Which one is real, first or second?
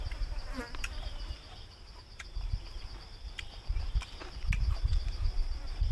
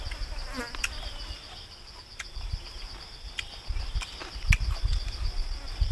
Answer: second